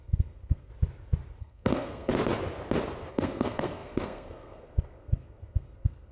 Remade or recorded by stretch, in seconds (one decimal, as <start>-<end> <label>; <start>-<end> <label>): 0.0-0.7 remade; 0.7-1.4 recorded; 1.4-2.1 remade; 2.1-3.1 recorded; 3.1-6.1 remade